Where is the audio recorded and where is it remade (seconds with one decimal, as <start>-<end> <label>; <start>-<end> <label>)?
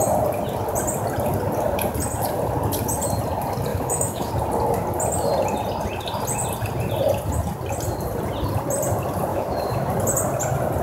0.0-3.7 recorded; 3.7-4.3 remade; 4.3-9.3 recorded; 9.3-9.9 remade; 9.9-10.8 recorded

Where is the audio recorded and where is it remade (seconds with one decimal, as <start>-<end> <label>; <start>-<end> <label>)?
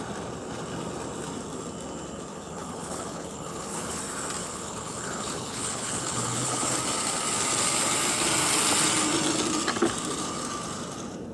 0.0-2.3 recorded; 2.3-4.0 remade; 4.0-4.4 recorded; 4.4-6.8 remade; 6.8-11.3 recorded